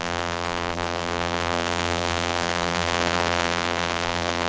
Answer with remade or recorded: remade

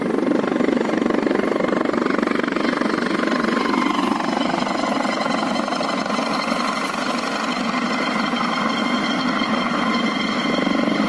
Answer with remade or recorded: recorded